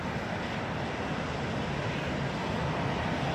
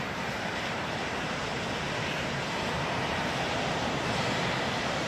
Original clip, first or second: first